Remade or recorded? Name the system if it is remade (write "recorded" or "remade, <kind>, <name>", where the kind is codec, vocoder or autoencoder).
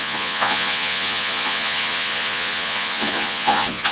remade, vocoder, Vocos